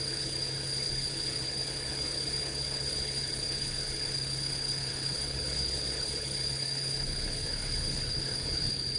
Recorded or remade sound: remade